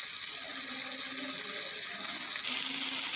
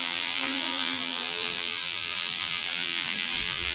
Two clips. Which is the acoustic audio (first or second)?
first